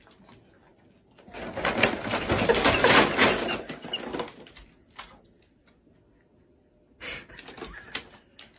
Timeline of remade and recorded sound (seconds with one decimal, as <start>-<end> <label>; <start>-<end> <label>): 0.0-8.6 recorded